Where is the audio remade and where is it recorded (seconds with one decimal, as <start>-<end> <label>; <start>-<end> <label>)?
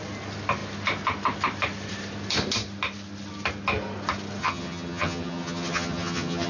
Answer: 0.0-4.4 recorded; 4.4-6.5 remade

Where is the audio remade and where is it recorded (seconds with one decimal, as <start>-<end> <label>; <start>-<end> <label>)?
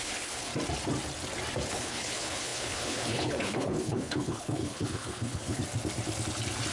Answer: 0.0-0.5 remade; 0.5-1.7 recorded; 1.7-5.6 remade; 5.6-6.7 recorded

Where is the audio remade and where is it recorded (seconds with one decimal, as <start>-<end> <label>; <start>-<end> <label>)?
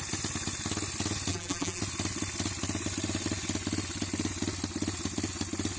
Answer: 0.0-1.3 recorded; 1.3-1.8 remade; 1.8-5.8 recorded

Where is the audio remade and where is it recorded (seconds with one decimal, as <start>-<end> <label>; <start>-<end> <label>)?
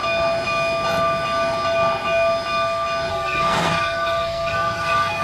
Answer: 0.0-3.1 recorded; 3.1-5.2 remade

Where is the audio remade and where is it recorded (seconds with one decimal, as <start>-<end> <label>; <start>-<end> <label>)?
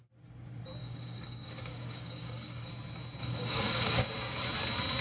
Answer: 0.0-0.8 recorded; 0.8-2.7 remade; 2.7-3.2 recorded; 3.2-4.0 remade; 4.0-5.0 recorded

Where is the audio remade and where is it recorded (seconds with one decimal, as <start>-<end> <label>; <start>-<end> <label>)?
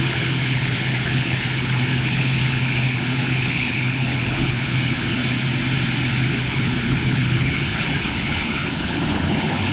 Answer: 0.0-5.2 remade; 5.2-6.3 recorded; 6.3-9.7 remade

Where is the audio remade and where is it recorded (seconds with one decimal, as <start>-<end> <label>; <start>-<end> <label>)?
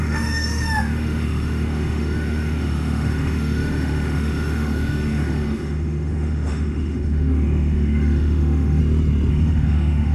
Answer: 0.0-8.8 remade; 8.8-9.3 recorded; 9.3-10.1 remade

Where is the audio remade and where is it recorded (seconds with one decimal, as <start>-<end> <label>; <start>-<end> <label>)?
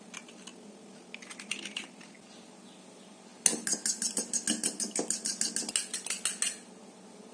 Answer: 0.0-7.3 recorded